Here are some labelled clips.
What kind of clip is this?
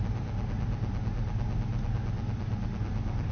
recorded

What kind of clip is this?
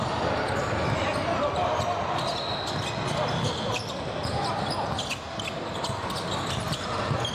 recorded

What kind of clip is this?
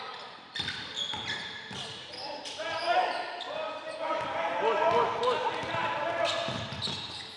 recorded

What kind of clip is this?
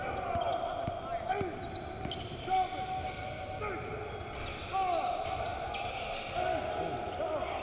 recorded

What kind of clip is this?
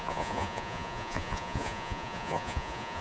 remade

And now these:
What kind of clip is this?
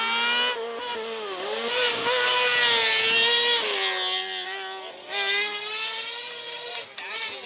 recorded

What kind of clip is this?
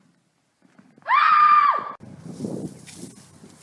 recorded